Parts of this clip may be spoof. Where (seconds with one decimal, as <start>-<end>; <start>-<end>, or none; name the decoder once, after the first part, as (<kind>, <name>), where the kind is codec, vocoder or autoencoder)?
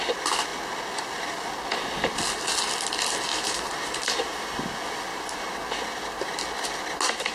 3.3-4.6 (vocoder, BigVGAN v2); 5.1-5.6